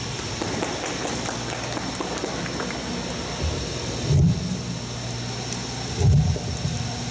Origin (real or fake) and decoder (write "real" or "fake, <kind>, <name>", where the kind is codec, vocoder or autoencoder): real